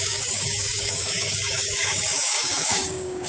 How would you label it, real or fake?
fake